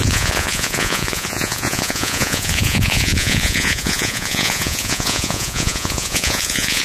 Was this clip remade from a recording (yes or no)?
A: yes